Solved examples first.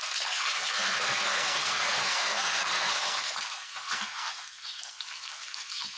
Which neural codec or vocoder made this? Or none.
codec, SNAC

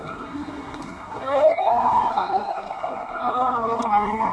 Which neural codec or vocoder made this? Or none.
codec, SNAC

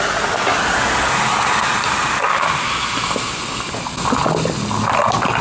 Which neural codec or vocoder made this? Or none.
none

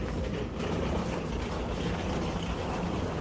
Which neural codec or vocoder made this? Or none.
none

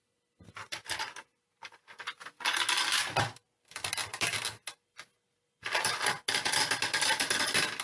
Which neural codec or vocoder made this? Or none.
none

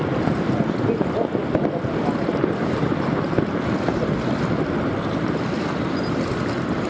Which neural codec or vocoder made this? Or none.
none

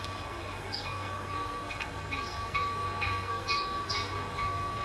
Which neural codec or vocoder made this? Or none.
codec, SNAC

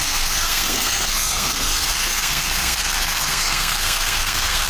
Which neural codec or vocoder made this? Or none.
codec, SNAC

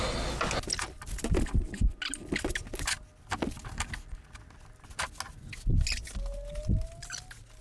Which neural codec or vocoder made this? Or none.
none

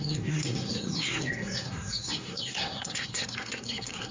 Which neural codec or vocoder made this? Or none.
codec, SNAC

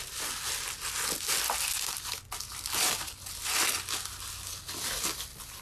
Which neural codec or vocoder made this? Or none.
none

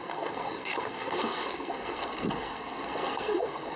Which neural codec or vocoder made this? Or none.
codec, SNAC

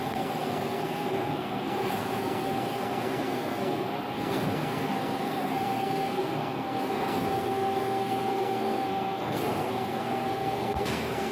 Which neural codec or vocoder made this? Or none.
codec, SNAC